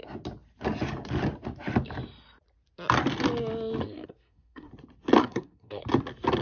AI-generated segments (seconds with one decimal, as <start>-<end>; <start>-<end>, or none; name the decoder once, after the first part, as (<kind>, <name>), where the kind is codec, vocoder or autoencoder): 3.8-4.7 (codec, SNAC); 5.2-5.8